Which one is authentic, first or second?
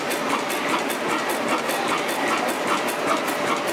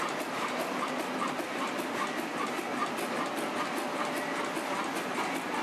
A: first